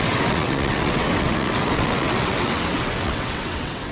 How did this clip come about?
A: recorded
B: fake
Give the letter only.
B